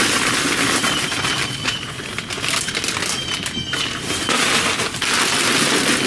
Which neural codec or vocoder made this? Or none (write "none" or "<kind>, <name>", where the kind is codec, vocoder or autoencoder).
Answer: none